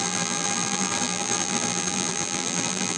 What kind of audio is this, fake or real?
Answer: fake